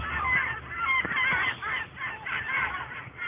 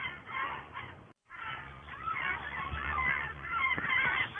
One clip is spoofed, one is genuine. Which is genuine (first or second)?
first